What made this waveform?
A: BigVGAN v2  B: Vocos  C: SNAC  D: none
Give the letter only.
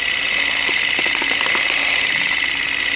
D